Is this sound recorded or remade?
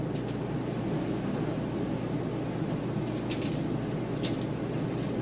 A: recorded